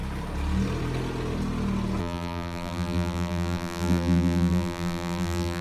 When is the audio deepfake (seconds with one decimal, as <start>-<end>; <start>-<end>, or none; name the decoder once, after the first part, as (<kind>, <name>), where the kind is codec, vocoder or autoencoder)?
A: 2.0-5.6 (vocoder, BigVGAN v2)